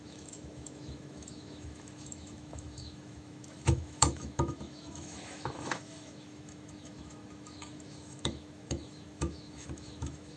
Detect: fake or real fake